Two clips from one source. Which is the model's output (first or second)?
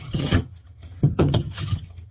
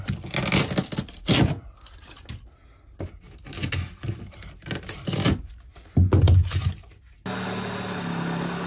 first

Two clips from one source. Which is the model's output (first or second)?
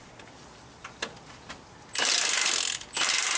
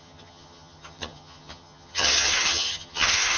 second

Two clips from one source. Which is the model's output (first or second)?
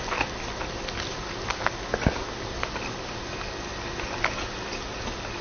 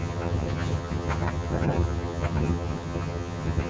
second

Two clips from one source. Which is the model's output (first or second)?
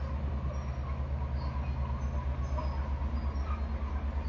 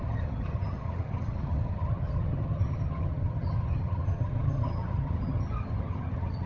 second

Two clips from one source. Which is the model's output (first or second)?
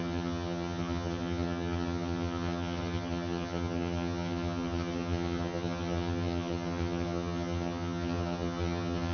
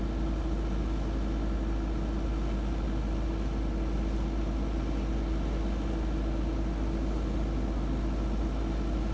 first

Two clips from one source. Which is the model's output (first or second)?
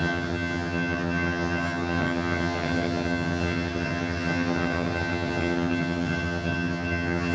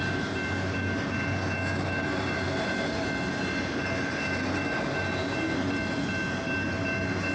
first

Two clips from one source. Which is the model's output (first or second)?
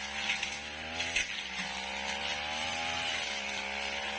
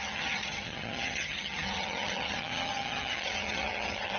second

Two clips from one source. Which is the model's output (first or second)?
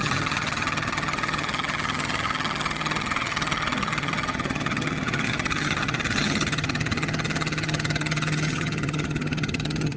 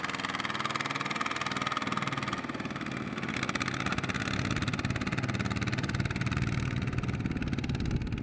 first